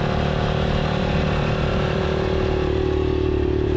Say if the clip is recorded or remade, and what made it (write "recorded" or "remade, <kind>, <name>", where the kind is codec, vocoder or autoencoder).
recorded